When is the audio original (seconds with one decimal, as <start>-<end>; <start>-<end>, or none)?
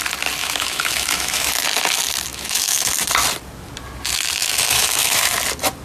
0.0-0.4; 1.5-2.3; 2.9-4.4; 5.3-5.8